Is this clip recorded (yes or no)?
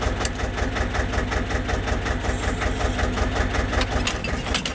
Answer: yes